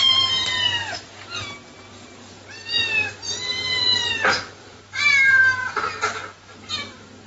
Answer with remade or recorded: recorded